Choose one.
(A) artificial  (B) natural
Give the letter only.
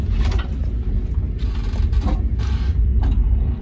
B